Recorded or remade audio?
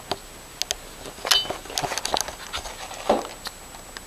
recorded